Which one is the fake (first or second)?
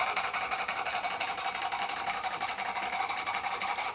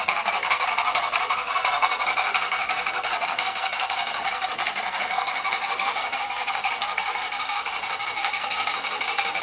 second